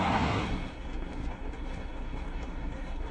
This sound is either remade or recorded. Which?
remade